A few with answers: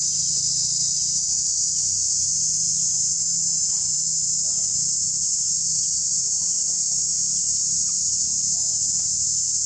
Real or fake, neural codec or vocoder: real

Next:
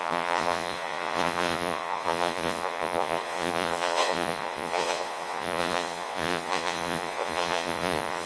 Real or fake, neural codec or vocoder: fake, vocoder, Vocos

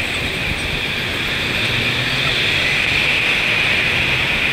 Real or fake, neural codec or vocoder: real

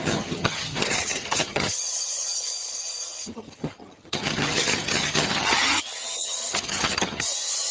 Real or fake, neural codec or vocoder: fake, vocoder, HiFi-GAN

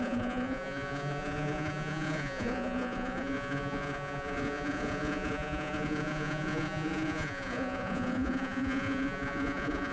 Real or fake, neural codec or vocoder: fake, vocoder, Vocos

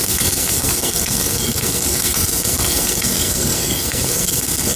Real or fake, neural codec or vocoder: fake, codec, SNAC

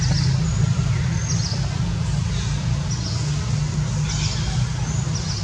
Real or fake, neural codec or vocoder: real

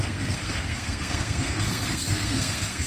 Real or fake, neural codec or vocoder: fake, codec, SNAC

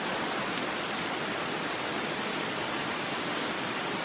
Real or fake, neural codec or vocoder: fake, vocoder, BigVGAN v2